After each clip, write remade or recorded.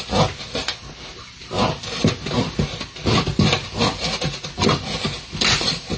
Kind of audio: recorded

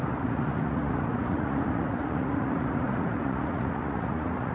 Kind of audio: remade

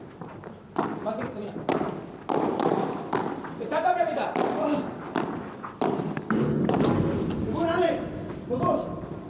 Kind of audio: recorded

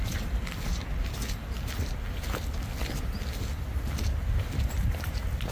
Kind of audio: recorded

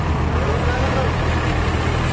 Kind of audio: recorded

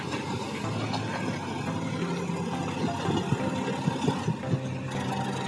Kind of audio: recorded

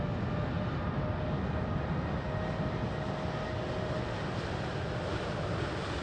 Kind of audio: recorded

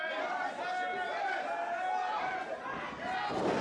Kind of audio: recorded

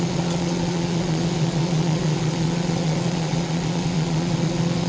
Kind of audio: remade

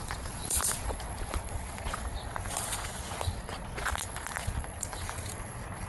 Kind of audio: remade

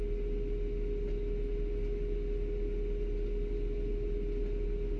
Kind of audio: recorded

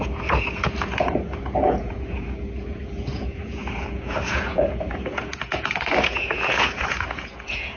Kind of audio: remade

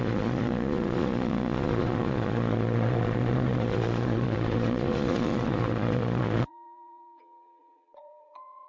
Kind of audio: remade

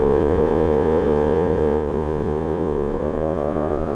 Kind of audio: remade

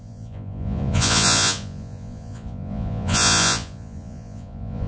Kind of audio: remade